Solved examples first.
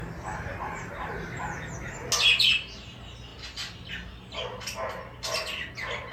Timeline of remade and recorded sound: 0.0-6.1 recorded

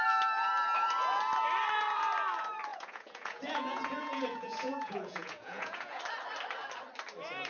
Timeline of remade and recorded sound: 0.0-2.7 recorded; 2.7-6.0 remade; 6.0-7.5 recorded

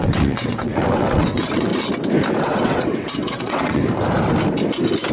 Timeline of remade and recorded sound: 0.0-1.7 remade; 1.7-2.4 recorded; 2.4-3.8 remade; 3.8-5.1 recorded